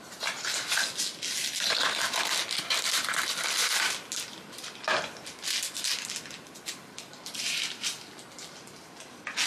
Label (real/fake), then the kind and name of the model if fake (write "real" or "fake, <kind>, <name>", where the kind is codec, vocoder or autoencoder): real